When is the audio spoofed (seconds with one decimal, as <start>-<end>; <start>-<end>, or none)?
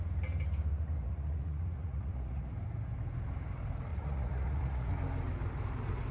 1.0-2.5; 3.9-4.9